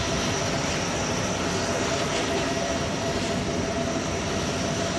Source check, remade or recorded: recorded